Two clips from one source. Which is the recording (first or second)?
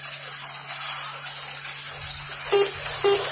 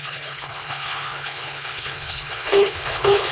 first